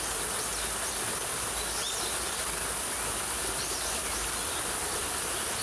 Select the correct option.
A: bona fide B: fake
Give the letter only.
A